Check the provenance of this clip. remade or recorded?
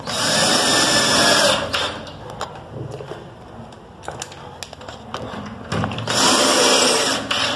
recorded